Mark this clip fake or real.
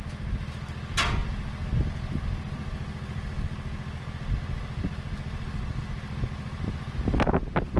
real